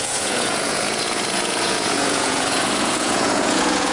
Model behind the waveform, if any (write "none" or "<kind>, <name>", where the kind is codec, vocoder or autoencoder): vocoder, Vocos